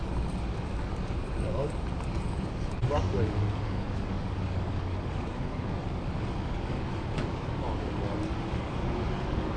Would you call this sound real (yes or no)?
no